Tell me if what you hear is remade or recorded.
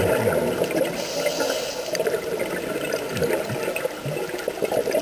recorded